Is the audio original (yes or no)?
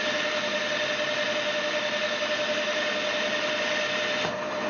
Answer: yes